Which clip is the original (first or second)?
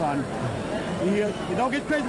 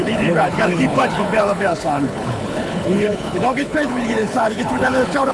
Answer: first